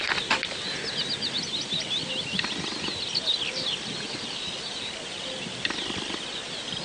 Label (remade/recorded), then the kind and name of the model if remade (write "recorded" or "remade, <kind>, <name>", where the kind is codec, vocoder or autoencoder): recorded